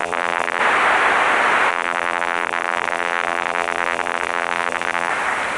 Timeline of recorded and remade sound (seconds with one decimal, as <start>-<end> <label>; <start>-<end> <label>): 0.0-0.6 remade; 0.6-1.7 recorded; 1.7-5.1 remade; 5.1-5.6 recorded